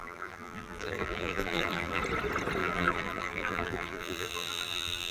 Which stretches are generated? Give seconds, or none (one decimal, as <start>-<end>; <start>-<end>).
0.0-2.0; 2.6-5.1